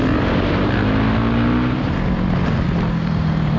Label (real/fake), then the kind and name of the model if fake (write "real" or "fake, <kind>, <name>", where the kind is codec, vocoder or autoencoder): real